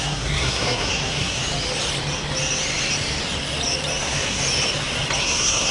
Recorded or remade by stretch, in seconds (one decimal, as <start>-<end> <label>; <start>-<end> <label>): 0.0-1.4 remade; 1.4-4.0 recorded; 4.0-4.4 remade; 4.4-5.2 recorded; 5.2-5.7 remade